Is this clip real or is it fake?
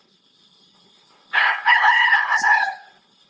fake